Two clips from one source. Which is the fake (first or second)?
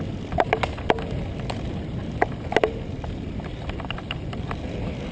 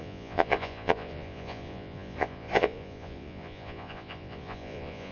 second